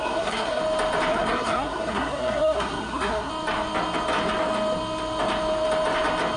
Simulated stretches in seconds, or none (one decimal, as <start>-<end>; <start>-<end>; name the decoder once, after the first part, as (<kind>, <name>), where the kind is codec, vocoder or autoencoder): 0.0-0.6 (codec, SNAC); 1.1-3.3

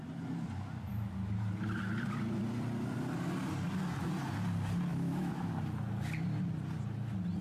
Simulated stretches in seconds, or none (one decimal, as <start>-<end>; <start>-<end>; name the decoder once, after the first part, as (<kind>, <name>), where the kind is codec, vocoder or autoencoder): 4.9-5.5 (autoencoder, DAC-VAE)

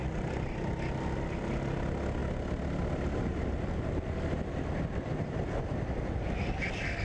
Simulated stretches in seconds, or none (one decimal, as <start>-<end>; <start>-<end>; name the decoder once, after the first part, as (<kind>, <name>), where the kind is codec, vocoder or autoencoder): none

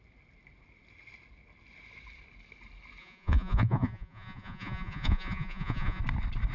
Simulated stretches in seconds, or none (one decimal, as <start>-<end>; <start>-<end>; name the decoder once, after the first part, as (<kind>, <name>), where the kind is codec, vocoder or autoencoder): 3.0-6.0 (vocoder, Vocos)

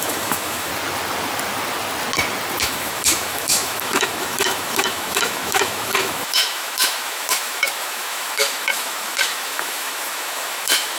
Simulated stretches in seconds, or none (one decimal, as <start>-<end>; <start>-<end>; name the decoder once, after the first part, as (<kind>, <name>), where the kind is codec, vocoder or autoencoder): 0.0-0.7 (autoencoder, DAC-VAE); 2.6-11.0

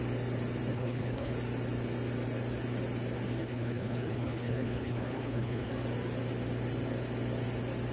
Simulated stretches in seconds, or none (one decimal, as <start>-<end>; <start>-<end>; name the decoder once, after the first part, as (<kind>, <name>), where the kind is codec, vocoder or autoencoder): 0.7-1.3 (codec, HILCodec); 3.4-5.7